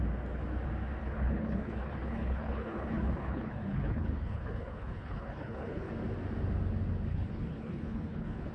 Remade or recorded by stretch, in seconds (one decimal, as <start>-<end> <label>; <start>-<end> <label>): 0.0-1.0 recorded; 1.0-5.9 remade; 5.9-7.1 recorded; 7.1-8.5 remade

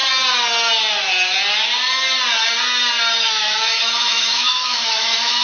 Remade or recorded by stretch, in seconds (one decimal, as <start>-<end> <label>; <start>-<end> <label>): 0.0-3.2 recorded; 3.2-5.4 remade

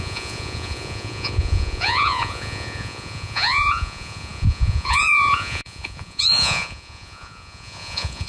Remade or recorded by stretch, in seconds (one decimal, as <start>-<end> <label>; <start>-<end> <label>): 0.0-8.3 remade

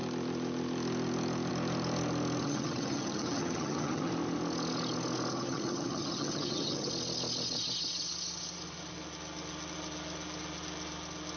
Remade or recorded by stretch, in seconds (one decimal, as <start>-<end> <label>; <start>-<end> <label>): 0.0-2.4 recorded; 2.4-4.1 remade; 4.1-5.3 recorded; 5.3-6.9 remade; 6.9-11.4 recorded

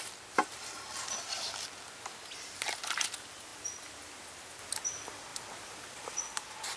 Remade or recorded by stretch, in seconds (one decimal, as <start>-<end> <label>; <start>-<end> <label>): 0.0-6.8 recorded

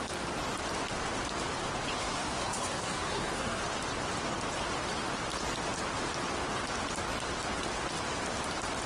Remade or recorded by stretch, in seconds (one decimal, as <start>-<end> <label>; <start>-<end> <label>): 0.0-2.0 recorded; 2.0-3.6 remade; 3.6-8.9 recorded